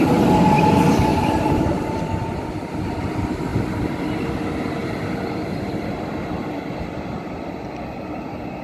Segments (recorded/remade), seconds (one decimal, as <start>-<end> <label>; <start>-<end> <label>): 0.0-3.5 recorded; 3.5-4.0 remade; 4.0-4.8 recorded; 4.8-7.1 remade; 7.1-8.6 recorded